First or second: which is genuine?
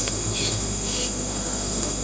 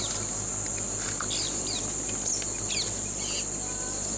second